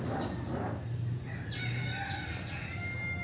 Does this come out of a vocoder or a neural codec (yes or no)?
no